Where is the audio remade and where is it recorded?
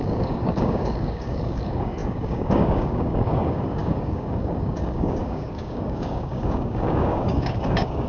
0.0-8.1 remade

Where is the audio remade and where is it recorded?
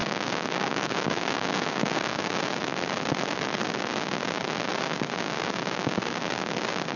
0.0-2.2 remade; 2.2-7.0 recorded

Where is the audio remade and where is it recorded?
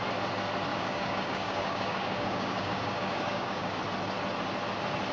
0.0-0.7 recorded; 0.7-3.8 remade; 3.8-5.1 recorded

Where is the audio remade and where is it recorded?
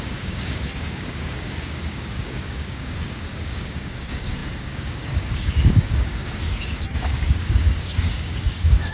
0.0-8.9 remade